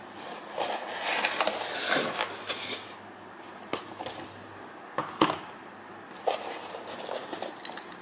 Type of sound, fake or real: real